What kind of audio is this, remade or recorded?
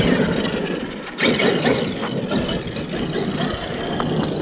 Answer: recorded